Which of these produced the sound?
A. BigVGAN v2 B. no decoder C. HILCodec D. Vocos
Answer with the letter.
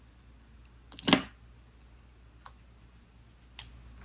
B